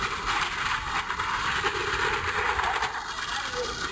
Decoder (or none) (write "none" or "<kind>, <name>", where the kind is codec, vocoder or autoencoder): none